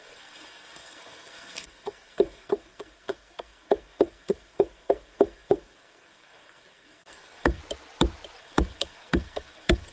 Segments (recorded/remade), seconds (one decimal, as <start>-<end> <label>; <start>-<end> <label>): 0.0-7.6 remade; 7.6-8.4 recorded; 8.4-9.9 remade